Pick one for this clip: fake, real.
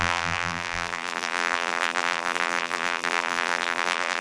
fake